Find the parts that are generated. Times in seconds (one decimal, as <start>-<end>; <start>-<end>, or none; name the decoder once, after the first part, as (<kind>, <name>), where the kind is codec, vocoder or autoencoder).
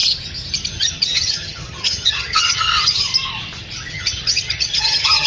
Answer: 0.7-3.1 (vocoder, HiFi-GAN); 3.9-5.3